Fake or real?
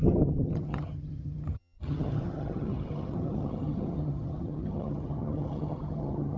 fake